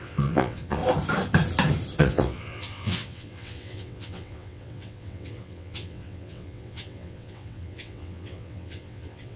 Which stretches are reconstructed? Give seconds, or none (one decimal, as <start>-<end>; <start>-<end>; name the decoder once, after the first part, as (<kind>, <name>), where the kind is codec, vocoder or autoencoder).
0.0-0.8 (vocoder, WaveNeXt); 2.0-9.4